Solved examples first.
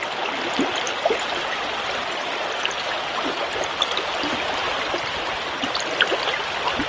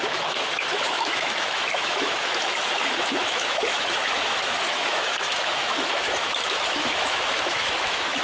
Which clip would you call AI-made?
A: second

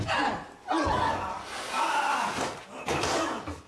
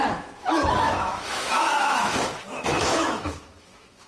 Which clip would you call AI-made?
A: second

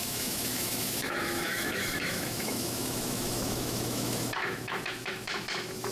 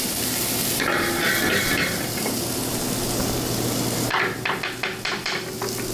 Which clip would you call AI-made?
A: first